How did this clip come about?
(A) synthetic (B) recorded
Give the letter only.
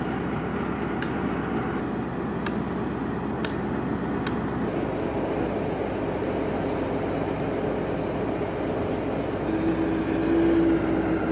B